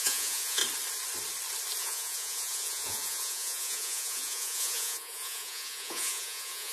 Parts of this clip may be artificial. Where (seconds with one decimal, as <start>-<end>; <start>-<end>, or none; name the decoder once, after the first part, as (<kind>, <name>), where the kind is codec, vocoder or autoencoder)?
0.0-0.6 (vocoder, Vocos); 1.8-6.7